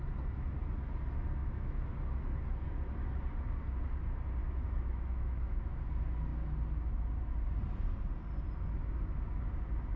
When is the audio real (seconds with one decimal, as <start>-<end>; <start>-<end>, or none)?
0.0-1.4; 1.9-4.4; 5.7-10.0